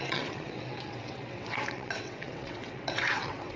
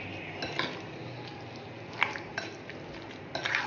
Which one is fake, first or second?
first